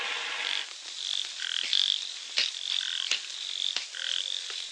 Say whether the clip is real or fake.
real